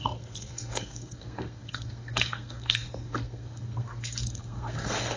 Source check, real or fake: fake